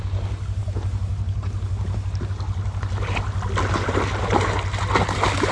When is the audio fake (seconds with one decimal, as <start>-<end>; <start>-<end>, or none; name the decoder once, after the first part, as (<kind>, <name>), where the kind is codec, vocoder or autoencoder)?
none